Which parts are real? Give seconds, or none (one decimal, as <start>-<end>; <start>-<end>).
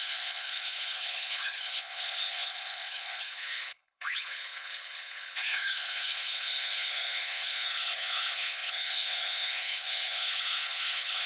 none